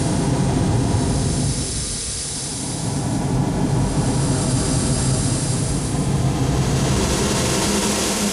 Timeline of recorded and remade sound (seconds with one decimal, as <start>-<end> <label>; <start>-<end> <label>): 0.0-8.3 recorded